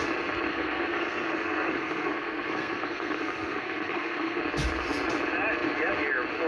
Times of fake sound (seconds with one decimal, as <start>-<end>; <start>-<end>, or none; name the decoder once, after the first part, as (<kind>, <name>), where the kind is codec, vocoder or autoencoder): 0.5-4.4 (codec, SNAC)